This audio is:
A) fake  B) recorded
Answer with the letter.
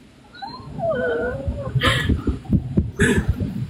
A